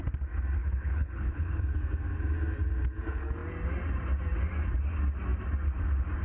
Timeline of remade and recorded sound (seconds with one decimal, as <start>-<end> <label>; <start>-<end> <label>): 0.0-0.6 recorded; 0.6-1.6 remade; 1.6-6.2 recorded